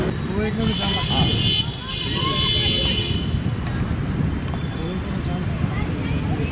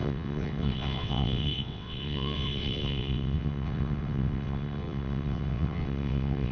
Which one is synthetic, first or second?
second